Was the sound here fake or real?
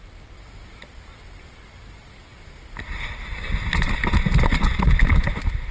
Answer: real